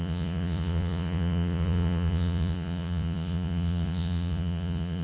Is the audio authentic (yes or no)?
no